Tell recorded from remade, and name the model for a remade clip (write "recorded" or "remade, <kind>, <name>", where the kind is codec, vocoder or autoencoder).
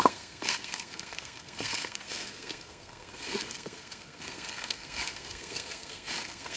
remade, codec, SNAC